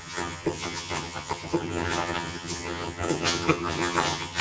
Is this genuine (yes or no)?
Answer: no